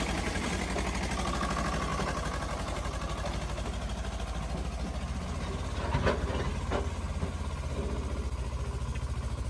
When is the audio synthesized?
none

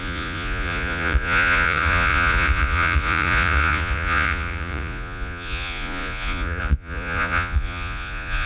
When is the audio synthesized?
0.0-8.5 (vocoder, Vocos)

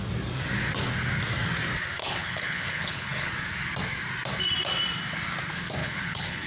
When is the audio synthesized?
2.0-3.3 (codec, HILCodec); 5.8-6.5

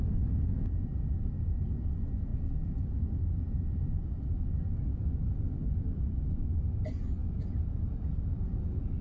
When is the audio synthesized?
7.2-8.1 (vocoder, Vocos)

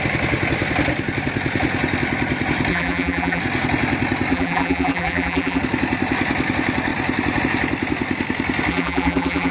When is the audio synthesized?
2.7-3.4 (vocoder, BigVGAN v2); 4.3-5.6; 8.7-9.5

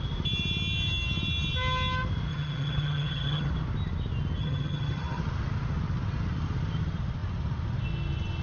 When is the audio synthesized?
2.3-3.5 (vocoder, HiFi-GAN); 4.4-5.2

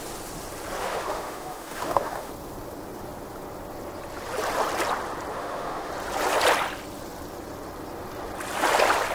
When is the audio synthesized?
0.8-2.3 (autoencoder, DAC-VAE); 5.3-5.9

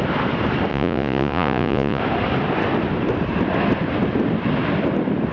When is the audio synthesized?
0.7-2.0 (vocoder, Vocos)